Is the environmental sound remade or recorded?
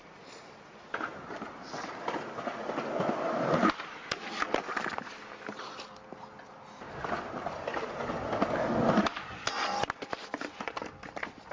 recorded